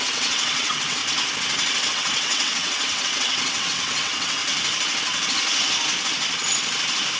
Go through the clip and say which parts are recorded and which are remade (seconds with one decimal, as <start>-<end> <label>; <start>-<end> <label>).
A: 0.0-1.0 remade; 1.0-1.9 recorded; 1.9-4.4 remade; 4.4-7.2 recorded